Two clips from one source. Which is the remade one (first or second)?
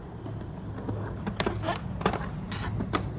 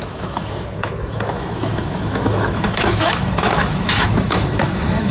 second